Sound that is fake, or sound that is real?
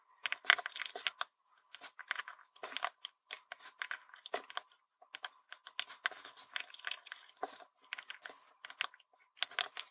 real